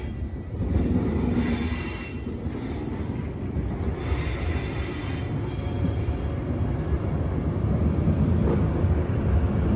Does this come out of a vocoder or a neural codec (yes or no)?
no